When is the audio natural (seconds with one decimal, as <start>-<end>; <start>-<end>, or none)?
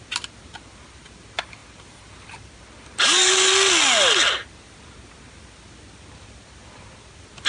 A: 0.0-7.5